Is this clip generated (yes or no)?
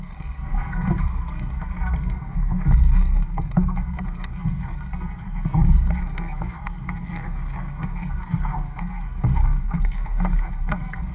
yes